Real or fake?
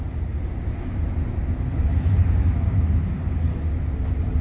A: real